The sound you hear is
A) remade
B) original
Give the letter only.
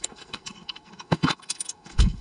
A